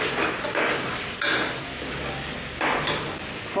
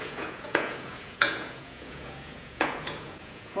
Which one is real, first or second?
first